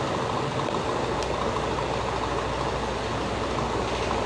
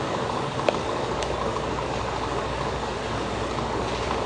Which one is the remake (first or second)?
second